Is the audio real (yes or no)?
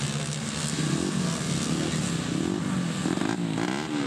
yes